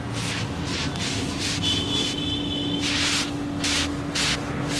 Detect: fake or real real